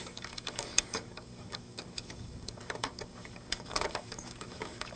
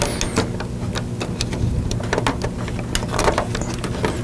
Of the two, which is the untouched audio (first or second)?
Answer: second